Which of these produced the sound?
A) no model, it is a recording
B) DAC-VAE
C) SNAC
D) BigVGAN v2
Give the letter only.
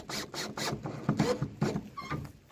A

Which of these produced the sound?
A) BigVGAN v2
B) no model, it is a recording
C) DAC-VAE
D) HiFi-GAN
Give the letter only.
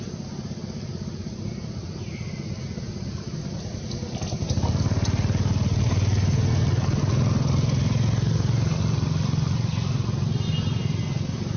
B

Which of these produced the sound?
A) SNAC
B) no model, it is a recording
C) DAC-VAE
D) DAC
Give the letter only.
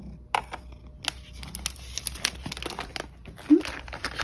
B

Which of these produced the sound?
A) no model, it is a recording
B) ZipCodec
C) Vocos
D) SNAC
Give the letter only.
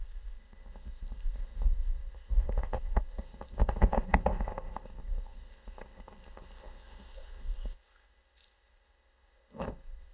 B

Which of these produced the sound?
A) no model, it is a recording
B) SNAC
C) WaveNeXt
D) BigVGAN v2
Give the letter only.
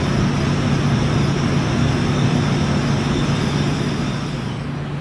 A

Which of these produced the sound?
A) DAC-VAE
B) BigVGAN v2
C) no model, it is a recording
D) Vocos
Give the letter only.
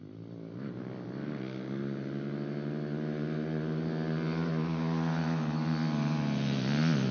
C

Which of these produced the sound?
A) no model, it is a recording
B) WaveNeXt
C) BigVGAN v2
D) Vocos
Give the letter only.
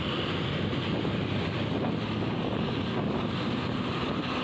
A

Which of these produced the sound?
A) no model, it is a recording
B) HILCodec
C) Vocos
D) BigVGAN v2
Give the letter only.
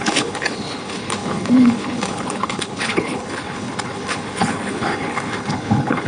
B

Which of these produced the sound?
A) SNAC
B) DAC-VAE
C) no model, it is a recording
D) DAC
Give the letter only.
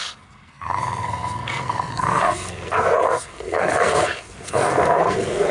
A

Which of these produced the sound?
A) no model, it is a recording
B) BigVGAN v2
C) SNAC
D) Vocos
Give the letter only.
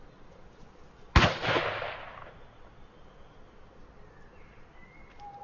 A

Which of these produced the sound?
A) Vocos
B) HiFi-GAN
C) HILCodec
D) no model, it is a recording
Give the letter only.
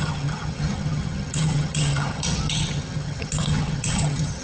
B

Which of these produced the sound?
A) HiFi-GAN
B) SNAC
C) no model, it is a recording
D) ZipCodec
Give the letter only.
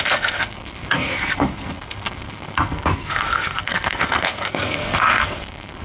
B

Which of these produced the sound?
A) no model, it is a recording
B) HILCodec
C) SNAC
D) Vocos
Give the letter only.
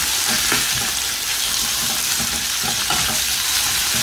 A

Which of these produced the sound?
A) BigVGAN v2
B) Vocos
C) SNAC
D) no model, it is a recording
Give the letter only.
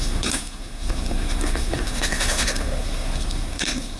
C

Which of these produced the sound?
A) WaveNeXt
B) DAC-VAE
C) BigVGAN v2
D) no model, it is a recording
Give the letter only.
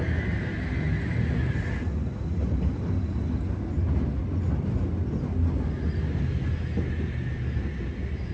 D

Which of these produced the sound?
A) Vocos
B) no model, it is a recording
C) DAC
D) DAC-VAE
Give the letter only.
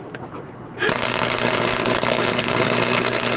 B